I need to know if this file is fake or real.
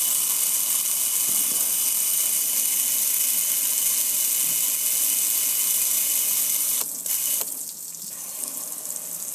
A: real